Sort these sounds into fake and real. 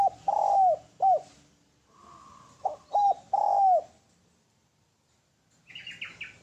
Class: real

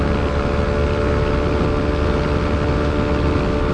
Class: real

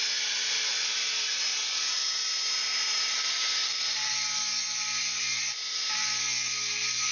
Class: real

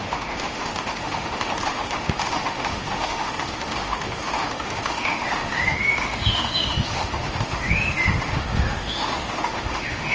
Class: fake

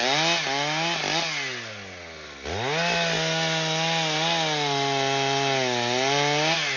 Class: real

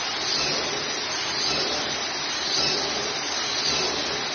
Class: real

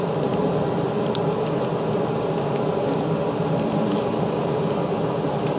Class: real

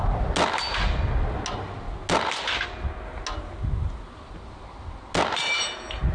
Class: real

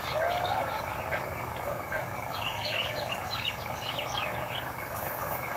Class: fake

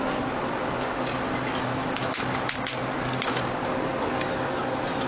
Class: real